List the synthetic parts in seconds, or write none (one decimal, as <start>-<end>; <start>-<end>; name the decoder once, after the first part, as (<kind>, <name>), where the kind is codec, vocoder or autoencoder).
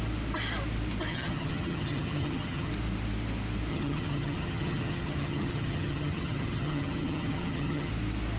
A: 1.1-2.7 (vocoder, HiFi-GAN); 3.7-7.9